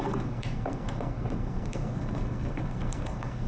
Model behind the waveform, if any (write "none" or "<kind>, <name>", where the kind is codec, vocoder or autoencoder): codec, SNAC